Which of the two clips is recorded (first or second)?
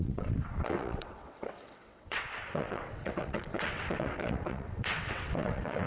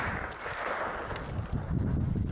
second